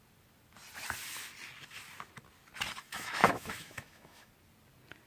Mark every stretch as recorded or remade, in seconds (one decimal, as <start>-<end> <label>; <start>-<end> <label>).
0.0-2.9 recorded; 2.9-4.3 remade; 4.3-5.1 recorded